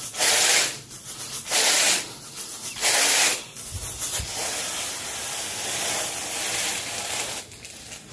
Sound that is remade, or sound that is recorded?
recorded